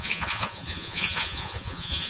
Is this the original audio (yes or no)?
no